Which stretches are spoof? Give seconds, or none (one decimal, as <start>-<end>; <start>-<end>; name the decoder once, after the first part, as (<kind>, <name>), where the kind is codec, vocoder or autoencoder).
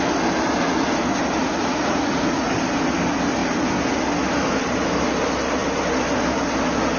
1.4-2.5 (vocoder, Vocos)